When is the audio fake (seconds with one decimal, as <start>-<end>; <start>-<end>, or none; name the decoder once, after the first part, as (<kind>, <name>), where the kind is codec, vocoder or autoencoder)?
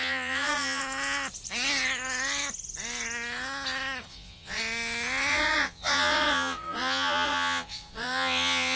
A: 0.0-0.8 (vocoder, Vocos); 4.1-4.6; 5.3-8.8